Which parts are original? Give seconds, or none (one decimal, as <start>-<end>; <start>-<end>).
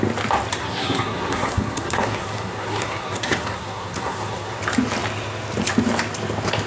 0.0-0.6; 4.6-6.7